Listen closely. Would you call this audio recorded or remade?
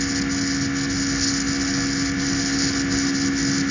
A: recorded